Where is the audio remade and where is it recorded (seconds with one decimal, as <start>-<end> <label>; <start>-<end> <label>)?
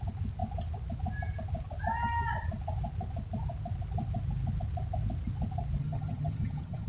0.0-5.8 recorded; 5.8-6.9 remade